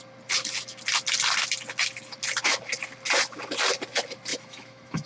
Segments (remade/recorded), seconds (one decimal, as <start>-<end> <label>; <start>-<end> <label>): 0.0-4.3 recorded; 4.3-5.1 remade